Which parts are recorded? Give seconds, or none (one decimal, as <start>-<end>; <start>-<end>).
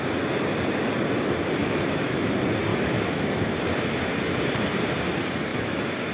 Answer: 0.0-1.6; 2.3-2.7; 3.5-5.5